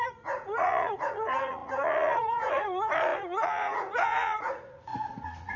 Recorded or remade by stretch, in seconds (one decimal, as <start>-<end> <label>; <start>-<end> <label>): 0.0-5.6 remade